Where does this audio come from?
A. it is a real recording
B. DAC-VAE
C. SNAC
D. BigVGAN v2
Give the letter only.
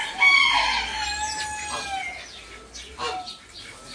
A